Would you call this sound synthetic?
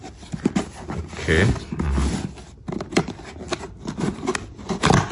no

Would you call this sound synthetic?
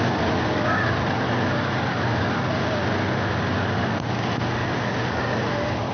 no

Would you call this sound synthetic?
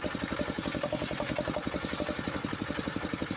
no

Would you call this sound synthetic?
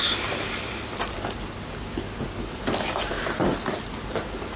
yes